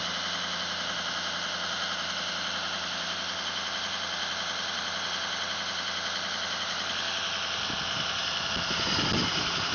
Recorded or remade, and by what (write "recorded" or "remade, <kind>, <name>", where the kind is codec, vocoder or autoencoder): recorded